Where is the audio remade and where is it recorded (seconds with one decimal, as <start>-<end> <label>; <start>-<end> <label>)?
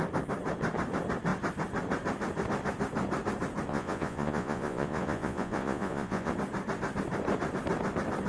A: 0.0-3.7 recorded; 3.7-6.3 remade; 6.3-8.3 recorded